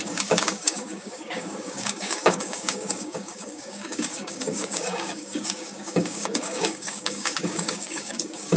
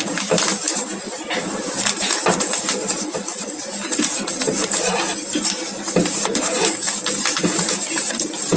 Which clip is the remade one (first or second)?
first